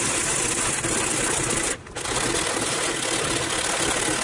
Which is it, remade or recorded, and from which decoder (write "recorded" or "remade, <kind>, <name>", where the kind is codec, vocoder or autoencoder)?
recorded